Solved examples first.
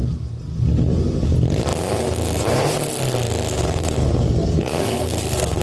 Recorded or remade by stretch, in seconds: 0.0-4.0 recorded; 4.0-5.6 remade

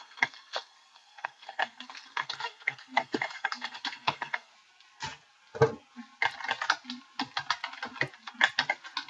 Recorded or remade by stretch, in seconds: 0.0-4.5 remade; 4.5-9.1 recorded

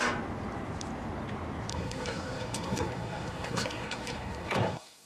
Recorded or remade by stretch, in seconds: 0.0-1.7 recorded; 1.7-5.1 remade